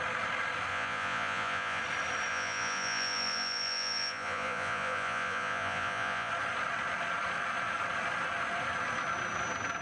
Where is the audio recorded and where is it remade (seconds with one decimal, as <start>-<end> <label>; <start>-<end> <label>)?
0.0-0.7 recorded; 0.7-1.8 remade; 1.8-2.3 recorded; 2.3-6.3 remade; 6.3-9.8 recorded